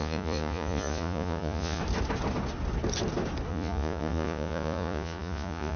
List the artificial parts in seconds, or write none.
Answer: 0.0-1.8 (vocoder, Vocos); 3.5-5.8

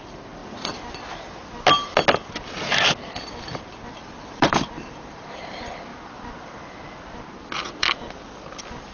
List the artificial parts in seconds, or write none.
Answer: 0.0-0.4 (vocoder, BigVGAN v2); 3.9-5.9; 7.6-8.9

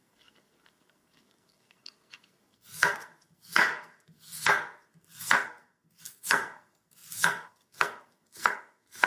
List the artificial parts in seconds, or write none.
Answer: 0.0-9.1 (codec, SNAC)

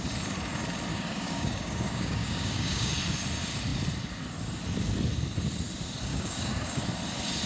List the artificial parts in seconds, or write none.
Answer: 0.9-2.9 (codec, DAC); 6.1-6.8

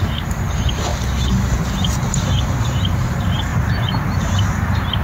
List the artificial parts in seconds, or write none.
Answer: 0.0-0.9 (vocoder, BigVGAN v2); 2.6-3.5; 4.0-5.0